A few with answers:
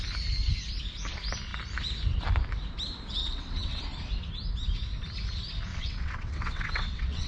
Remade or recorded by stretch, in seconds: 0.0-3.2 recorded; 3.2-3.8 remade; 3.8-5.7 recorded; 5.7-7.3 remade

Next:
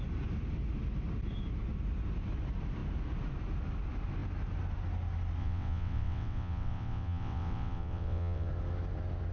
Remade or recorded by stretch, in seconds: 0.0-5.4 recorded; 5.4-8.5 remade; 8.5-9.3 recorded

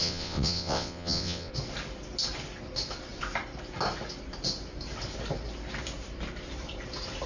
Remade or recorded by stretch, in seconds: 0.0-1.5 remade; 1.5-7.3 recorded

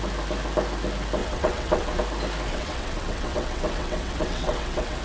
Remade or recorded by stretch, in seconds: 0.0-1.2 recorded; 1.2-2.0 remade; 2.0-2.5 recorded; 2.5-5.0 remade

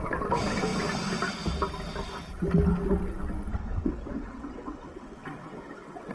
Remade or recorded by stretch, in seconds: 0.0-3.5 recorded; 3.5-6.1 remade

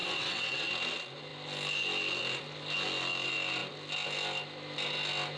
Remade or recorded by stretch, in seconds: 0.0-0.7 remade; 0.7-5.4 recorded

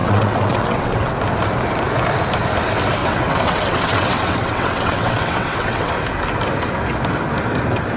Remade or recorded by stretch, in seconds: 0.0-1.1 remade; 1.1-3.0 recorded; 3.0-5.9 remade; 5.9-8.0 recorded